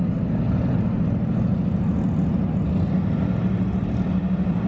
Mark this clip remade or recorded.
recorded